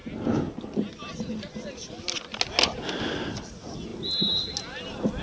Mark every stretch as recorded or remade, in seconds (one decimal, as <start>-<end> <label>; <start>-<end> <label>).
0.0-5.2 recorded